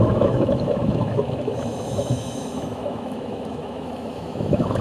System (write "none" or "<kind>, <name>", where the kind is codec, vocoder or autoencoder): autoencoder, DAC-VAE